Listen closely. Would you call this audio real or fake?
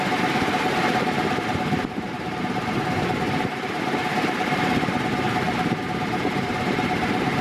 fake